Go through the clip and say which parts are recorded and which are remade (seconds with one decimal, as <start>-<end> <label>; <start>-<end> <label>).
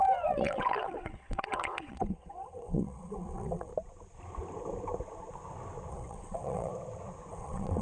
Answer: 0.0-3.7 remade; 3.7-5.9 recorded; 5.9-6.7 remade; 6.7-7.3 recorded; 7.3-7.8 remade